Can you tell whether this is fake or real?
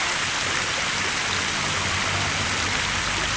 real